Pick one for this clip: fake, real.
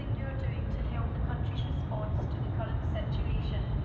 real